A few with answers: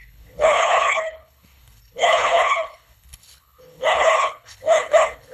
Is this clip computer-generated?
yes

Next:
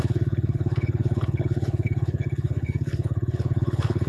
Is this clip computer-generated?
yes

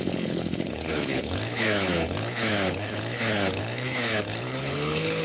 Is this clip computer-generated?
yes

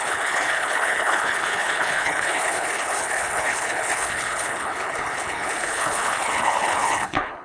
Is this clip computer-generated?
yes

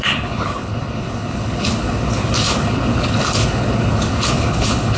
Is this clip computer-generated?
yes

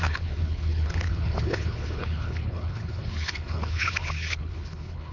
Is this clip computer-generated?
yes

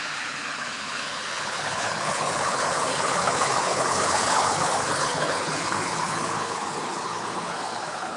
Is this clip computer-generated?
yes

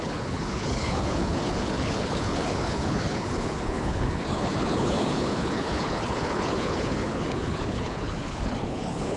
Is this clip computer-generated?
yes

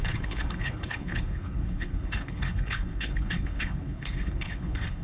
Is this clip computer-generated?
yes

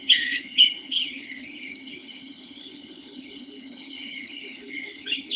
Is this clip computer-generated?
yes